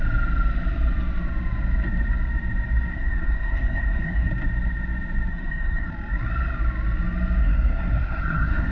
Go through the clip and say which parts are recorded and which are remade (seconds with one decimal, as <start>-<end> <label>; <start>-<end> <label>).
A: 0.0-2.9 recorded; 2.9-4.3 remade; 4.3-5.3 recorded; 5.3-5.9 remade; 5.9-7.4 recorded; 7.4-8.7 remade